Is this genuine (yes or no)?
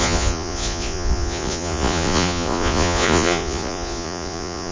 no